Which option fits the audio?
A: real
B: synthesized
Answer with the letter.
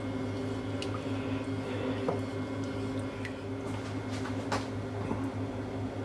A